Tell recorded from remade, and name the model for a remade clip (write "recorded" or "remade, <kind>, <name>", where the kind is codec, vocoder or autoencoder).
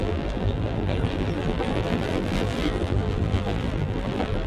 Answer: remade, vocoder, BigVGAN v2